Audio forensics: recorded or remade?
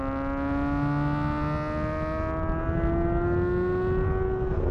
recorded